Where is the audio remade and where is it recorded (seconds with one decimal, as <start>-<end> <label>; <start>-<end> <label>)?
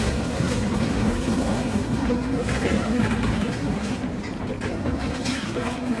0.0-4.0 remade; 4.0-4.7 recorded; 4.7-6.0 remade